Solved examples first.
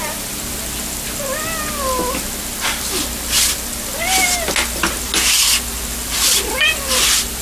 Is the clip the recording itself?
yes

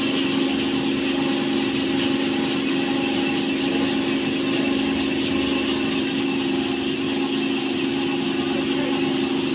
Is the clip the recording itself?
yes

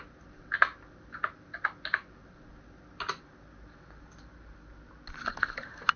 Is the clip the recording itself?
yes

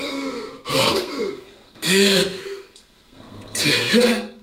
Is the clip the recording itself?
no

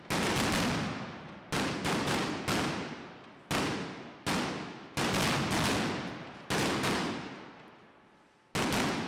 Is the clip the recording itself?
yes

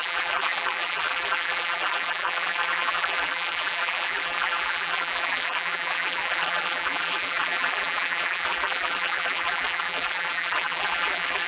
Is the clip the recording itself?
no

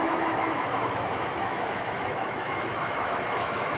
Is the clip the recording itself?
no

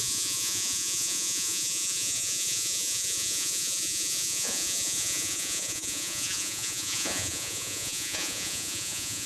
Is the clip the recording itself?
no